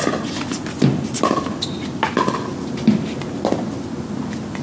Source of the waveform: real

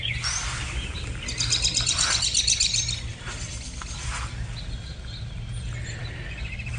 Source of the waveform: real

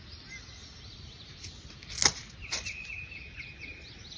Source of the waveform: real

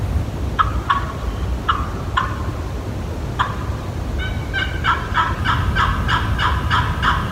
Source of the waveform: real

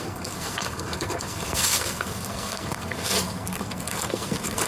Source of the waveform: fake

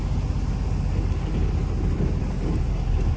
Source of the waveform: real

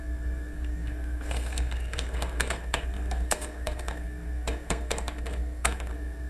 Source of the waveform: fake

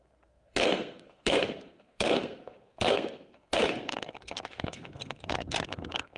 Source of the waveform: fake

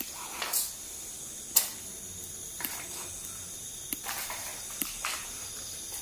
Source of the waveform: real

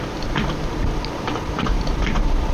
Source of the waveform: fake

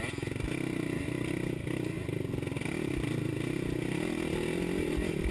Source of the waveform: real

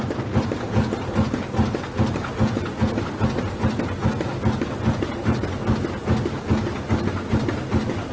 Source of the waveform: real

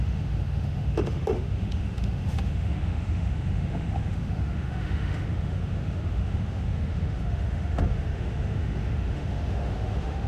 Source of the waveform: fake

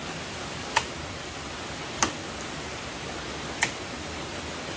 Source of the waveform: fake